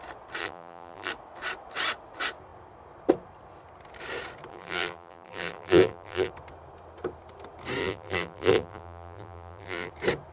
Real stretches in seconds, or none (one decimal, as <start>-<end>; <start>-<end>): 0.0-0.4; 1.1-4.5; 6.3-7.8; 9.9-10.3

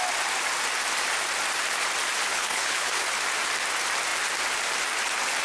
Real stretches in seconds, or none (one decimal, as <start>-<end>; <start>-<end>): 0.0-2.3; 3.0-5.4

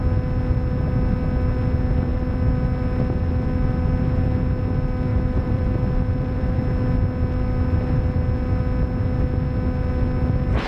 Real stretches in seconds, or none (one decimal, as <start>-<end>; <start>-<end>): 0.0-5.1; 6.6-10.7

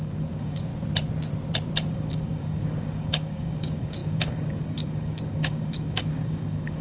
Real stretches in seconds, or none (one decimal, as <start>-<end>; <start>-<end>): 0.7-1.9